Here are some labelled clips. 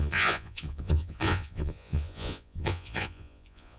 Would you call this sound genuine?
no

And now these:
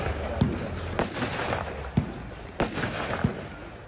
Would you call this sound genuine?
yes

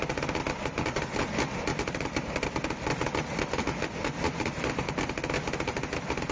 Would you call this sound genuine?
yes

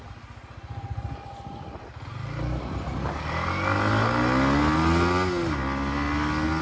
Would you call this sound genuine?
yes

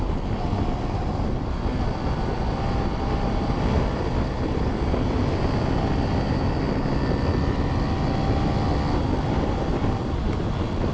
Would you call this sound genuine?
yes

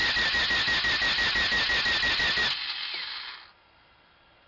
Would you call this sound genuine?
yes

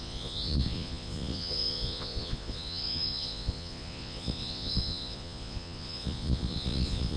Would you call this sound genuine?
no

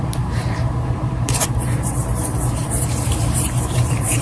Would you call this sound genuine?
no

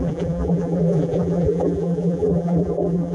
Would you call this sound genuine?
no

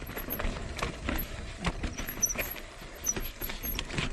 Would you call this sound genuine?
yes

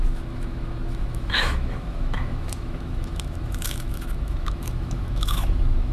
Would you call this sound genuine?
no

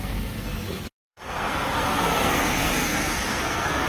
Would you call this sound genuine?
no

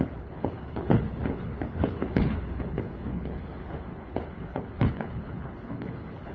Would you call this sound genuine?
no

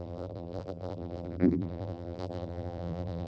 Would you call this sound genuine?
no